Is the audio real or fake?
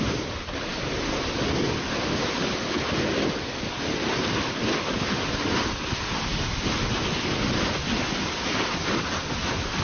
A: real